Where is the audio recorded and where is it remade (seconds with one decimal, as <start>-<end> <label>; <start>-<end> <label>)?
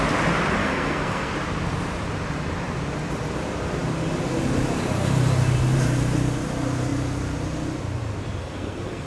0.0-0.6 recorded; 0.6-1.3 remade; 1.3-8.4 recorded; 8.4-9.1 remade